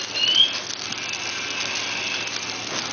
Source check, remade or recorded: recorded